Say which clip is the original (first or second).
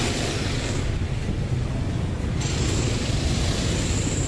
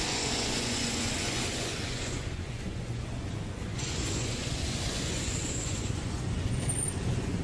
first